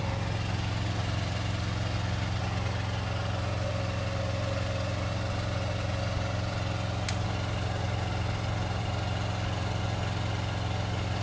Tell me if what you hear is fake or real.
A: real